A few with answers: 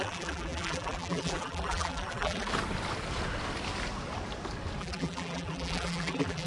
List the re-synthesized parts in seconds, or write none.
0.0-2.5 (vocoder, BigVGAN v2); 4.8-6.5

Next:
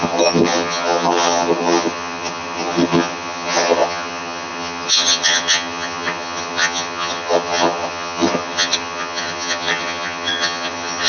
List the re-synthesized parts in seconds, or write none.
0.0-11.1 (vocoder, HiFi-GAN)

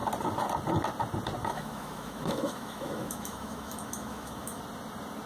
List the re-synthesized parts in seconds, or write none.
1.4-4.6 (autoencoder, DAC-VAE)

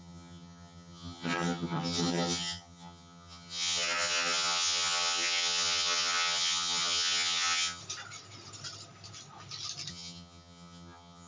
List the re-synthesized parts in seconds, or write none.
0.0-7.8 (vocoder, HiFi-GAN); 9.9-11.3

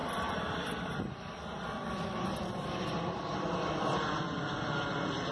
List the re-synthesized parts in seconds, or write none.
0.0-3.2 (vocoder, BigVGAN v2)